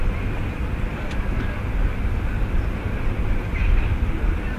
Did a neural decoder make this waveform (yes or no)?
no